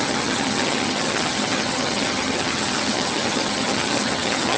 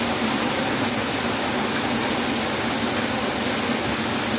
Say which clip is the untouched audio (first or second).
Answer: second